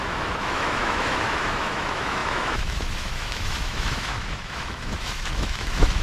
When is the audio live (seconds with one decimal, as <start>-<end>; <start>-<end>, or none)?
none